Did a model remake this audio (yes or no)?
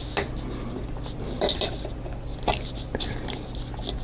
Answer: no